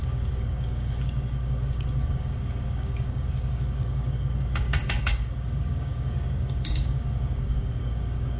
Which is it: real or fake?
fake